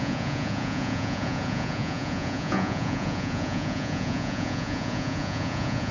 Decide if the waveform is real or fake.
fake